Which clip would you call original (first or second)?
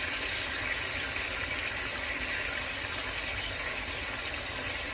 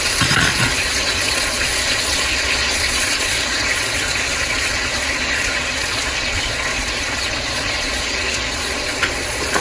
first